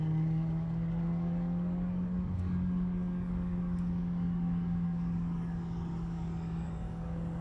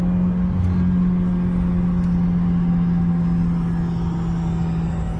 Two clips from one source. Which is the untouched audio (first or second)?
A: second